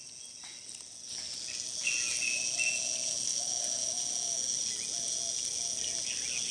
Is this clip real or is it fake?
real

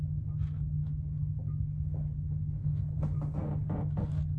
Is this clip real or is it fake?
real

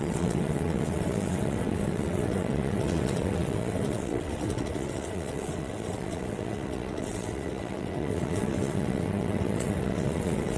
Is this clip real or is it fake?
fake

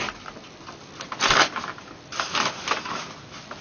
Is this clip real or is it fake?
real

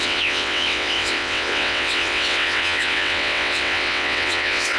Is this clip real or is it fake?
fake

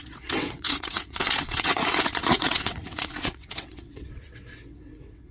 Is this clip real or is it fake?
fake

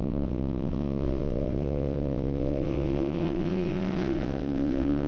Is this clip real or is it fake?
fake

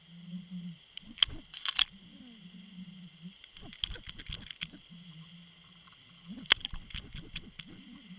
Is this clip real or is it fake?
real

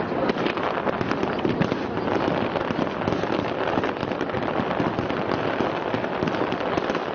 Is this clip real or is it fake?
real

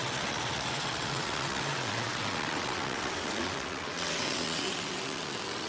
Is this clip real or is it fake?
fake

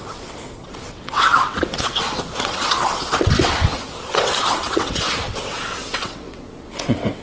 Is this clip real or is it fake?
fake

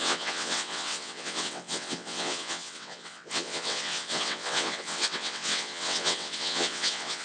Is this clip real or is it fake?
fake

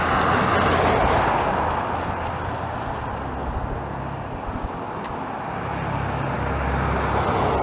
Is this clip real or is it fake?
real